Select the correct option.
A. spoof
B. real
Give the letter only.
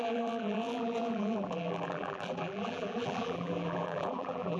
A